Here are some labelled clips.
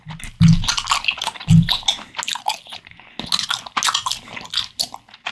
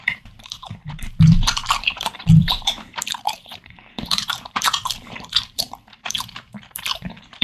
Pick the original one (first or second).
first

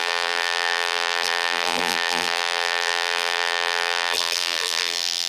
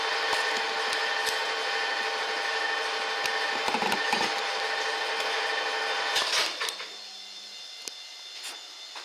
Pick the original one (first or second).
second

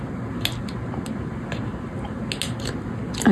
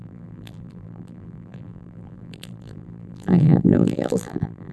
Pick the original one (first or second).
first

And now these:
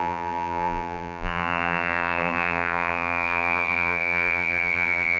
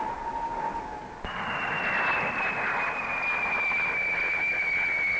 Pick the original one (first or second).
second